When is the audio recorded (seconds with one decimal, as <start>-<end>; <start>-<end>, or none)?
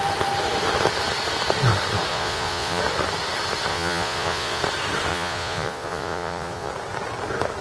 0.0-2.1; 2.8-3.7; 4.6-5.1; 6.7-7.6